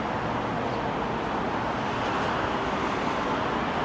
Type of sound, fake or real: real